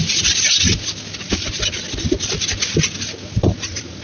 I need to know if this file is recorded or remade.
recorded